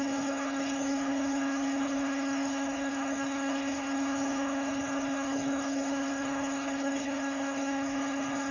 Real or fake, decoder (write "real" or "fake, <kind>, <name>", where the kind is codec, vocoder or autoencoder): fake, codec, HILCodec